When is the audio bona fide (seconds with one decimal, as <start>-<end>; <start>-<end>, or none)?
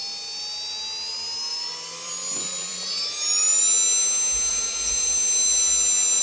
0.0-1.5; 3.6-4.5